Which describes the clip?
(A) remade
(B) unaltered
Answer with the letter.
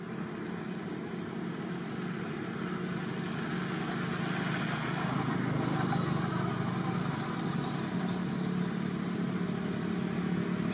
B